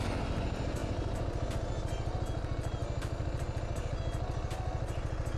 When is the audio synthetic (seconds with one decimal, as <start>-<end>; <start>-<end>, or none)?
none